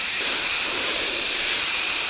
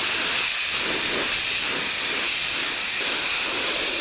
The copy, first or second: first